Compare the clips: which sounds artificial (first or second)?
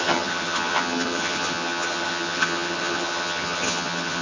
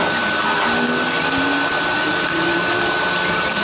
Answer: first